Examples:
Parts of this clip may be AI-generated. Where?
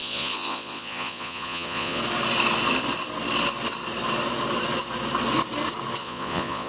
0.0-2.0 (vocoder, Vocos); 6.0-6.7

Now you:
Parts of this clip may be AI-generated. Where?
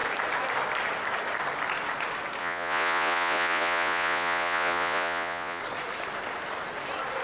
2.4-5.6 (vocoder, Vocos)